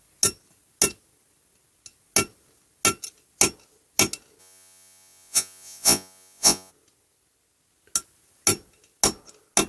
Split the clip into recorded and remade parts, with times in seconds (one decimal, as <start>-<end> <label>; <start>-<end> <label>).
0.0-4.4 recorded; 4.4-6.7 remade; 6.7-9.7 recorded